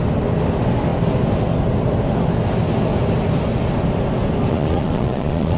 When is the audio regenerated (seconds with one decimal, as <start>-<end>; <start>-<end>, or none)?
4.5-5.6